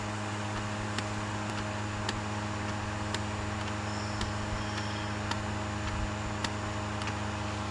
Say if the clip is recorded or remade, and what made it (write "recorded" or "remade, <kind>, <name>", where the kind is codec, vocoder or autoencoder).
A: recorded